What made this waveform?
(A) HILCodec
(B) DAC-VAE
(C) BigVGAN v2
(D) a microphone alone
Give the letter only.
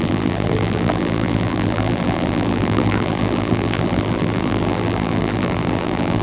C